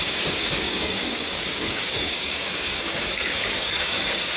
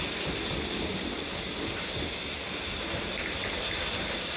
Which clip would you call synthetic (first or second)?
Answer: first